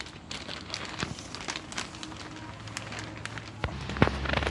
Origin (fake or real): real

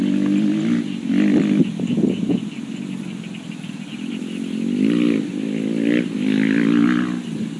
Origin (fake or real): real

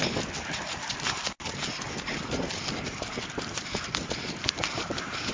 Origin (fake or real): real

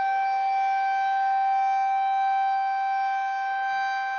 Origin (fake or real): real